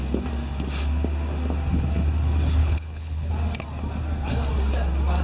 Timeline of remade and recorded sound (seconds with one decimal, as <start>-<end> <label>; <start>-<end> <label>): 0.0-2.6 recorded; 2.6-3.3 remade; 3.3-5.2 recorded

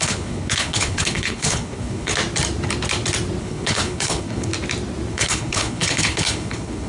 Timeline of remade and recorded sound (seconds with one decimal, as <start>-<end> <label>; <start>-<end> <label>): 0.0-2.1 remade; 2.1-3.4 recorded; 3.4-4.5 remade; 4.5-5.1 recorded; 5.1-6.9 remade

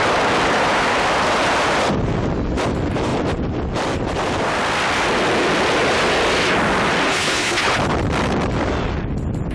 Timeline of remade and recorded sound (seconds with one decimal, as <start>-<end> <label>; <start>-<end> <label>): 0.0-7.1 recorded; 7.1-7.7 remade; 7.7-9.5 recorded

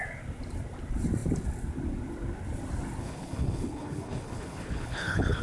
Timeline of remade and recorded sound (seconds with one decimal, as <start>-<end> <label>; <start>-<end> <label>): 0.0-3.0 recorded; 3.0-5.4 remade

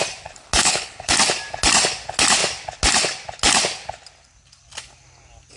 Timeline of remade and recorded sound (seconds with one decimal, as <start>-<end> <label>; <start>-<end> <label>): 0.0-0.6 recorded; 0.6-1.1 remade; 1.1-5.6 recorded

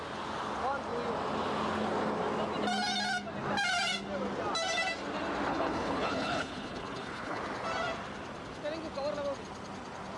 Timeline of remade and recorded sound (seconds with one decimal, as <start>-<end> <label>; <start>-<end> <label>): 0.0-5.5 recorded; 5.5-7.4 remade; 7.4-10.2 recorded